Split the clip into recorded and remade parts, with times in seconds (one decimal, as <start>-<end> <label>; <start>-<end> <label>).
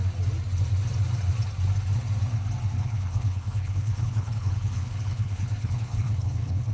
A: 0.0-2.8 recorded; 2.8-6.7 remade